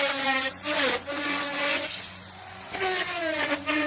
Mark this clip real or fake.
fake